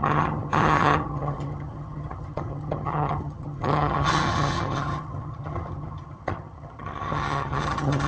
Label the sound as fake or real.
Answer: fake